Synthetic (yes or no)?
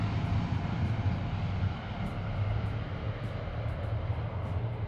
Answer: no